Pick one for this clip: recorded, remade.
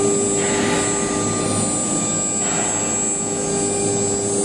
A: recorded